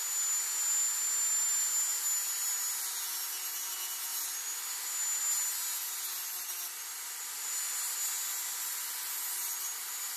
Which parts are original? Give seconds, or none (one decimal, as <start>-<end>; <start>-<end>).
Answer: 0.0-10.2